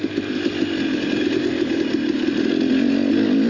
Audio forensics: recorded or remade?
recorded